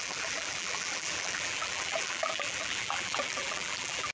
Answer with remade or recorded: remade